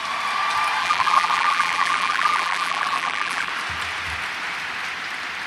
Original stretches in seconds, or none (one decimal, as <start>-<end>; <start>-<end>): 0.0-0.8; 3.5-5.5